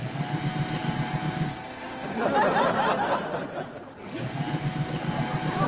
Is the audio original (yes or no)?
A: yes